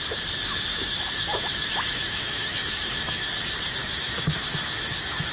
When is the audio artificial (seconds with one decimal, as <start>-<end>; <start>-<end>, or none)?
0.7-3.3; 3.8-5.3